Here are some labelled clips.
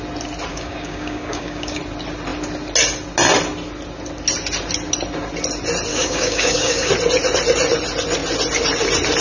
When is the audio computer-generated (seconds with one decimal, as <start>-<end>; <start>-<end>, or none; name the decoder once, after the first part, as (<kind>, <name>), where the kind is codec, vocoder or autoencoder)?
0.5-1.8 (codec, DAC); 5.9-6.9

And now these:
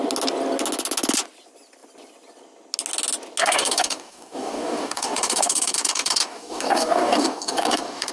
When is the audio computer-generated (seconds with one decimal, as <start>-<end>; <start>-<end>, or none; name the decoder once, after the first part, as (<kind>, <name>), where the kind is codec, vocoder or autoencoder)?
3.4-8.1 (codec, DAC)

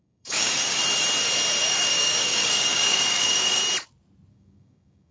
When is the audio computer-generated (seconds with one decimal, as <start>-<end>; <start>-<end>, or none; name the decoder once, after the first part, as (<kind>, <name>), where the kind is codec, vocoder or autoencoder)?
0.0-0.8 (codec, DAC); 1.6-3.6; 4.3-5.1